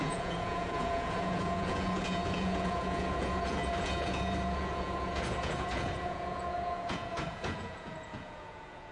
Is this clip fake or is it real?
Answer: fake